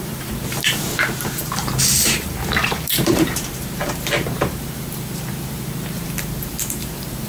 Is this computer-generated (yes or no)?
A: yes